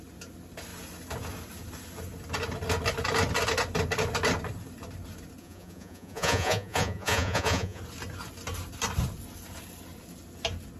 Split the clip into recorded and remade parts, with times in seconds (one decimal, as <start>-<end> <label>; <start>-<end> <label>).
0.0-5.4 recorded; 5.4-7.8 remade; 7.8-10.8 recorded